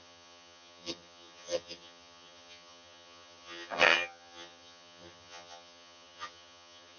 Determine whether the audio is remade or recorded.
remade